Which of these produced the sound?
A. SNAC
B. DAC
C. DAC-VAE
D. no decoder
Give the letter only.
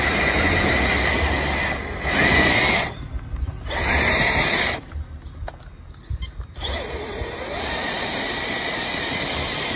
D